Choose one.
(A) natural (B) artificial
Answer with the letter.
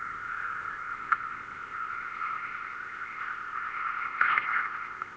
B